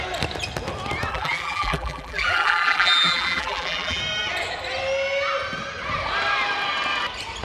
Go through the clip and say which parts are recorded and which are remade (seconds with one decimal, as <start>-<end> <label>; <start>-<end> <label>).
0.0-1.1 recorded; 1.1-4.0 remade; 4.0-7.4 recorded

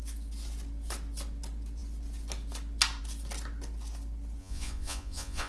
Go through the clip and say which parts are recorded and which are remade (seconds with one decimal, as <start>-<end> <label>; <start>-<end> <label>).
0.0-4.4 recorded; 4.4-5.5 remade

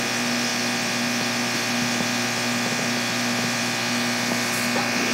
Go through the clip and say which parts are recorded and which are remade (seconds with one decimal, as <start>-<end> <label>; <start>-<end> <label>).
0.0-0.5 recorded; 0.5-3.6 remade; 3.6-5.1 recorded

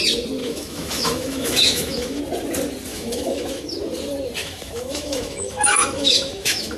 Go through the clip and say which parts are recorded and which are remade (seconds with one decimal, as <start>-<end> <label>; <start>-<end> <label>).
0.0-0.4 recorded; 0.4-2.2 remade; 2.2-2.9 recorded; 2.9-3.7 remade; 3.7-4.4 recorded; 4.4-6.8 remade